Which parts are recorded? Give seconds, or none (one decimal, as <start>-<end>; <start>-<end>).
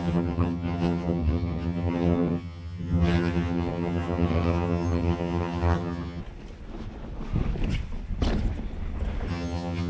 6.2-9.3